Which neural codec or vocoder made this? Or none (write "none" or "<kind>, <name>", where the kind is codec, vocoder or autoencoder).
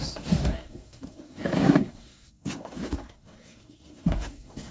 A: codec, SNAC